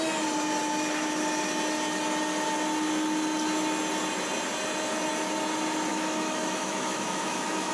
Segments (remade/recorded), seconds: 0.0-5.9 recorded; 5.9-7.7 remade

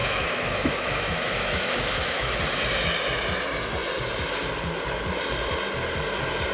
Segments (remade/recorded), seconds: 0.0-2.3 remade; 2.3-6.5 recorded

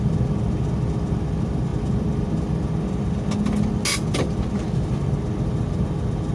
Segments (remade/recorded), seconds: 0.0-6.3 recorded

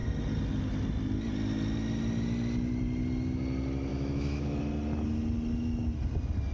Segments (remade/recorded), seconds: 0.0-3.9 recorded; 3.9-4.6 remade; 4.6-6.5 recorded

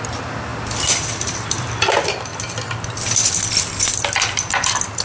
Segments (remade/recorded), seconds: 0.0-5.0 recorded

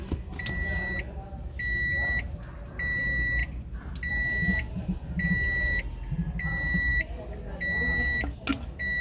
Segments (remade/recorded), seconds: 0.0-9.0 recorded

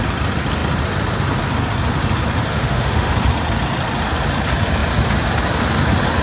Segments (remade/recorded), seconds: 0.0-2.5 recorded; 2.5-3.1 remade; 3.1-6.2 recorded